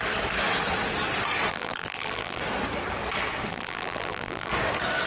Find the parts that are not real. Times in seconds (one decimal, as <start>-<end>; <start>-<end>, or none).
1.5-2.4; 3.5-4.5